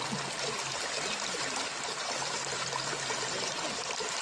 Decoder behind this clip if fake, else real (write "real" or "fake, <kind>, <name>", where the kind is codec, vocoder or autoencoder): real